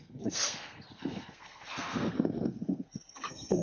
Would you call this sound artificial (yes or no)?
yes